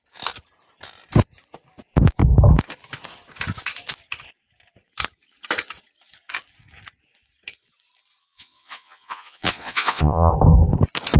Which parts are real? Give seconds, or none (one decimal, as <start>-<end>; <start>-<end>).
0.0-8.2; 10.3-11.2